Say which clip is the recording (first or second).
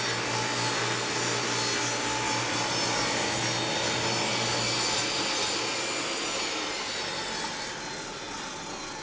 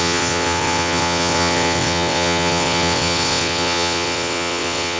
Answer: first